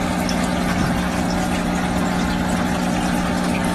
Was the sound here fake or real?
real